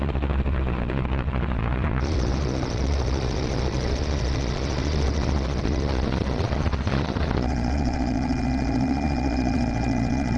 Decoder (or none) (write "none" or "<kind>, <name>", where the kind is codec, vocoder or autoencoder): vocoder, Vocos